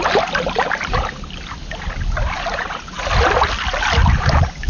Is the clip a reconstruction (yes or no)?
no